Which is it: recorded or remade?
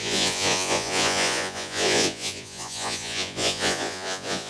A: remade